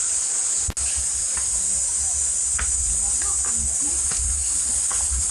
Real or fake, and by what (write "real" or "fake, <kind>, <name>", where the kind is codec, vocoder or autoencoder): real